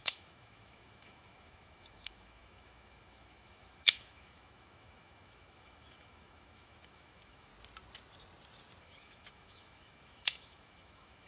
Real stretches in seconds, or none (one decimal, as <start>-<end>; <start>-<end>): 7.5-8.8